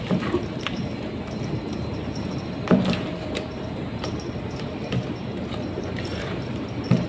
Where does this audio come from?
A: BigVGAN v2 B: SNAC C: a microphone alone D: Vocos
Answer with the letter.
A